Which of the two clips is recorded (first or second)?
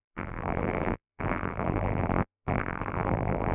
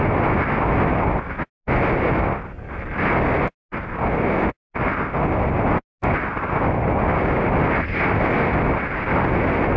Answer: second